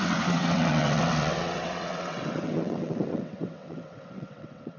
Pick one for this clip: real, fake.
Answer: fake